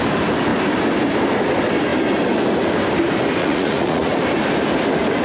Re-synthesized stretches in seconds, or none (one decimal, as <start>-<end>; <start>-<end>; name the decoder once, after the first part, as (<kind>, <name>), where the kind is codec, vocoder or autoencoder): 3.4-4.1 (vocoder, Vocos)